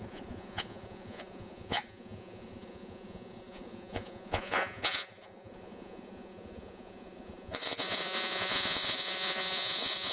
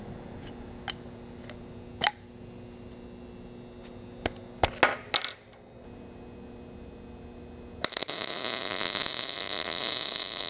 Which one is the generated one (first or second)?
first